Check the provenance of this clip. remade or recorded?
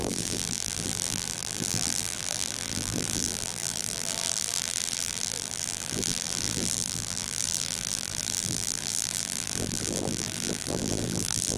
remade